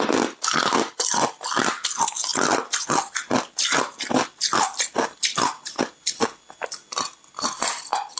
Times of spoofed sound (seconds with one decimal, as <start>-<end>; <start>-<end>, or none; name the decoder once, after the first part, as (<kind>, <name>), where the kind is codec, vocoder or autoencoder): none